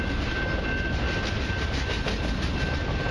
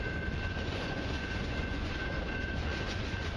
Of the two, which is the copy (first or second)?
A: second